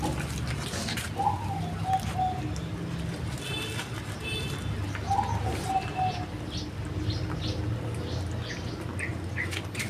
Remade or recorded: recorded